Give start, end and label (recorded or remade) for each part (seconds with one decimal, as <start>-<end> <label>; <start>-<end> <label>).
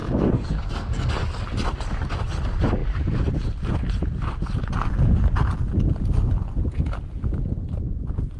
0.0-1.1 remade; 1.1-8.4 recorded